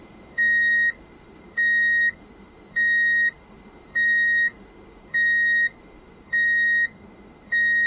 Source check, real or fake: fake